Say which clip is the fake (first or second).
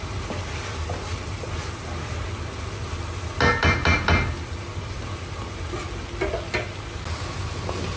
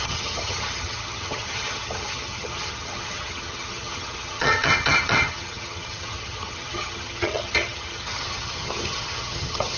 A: second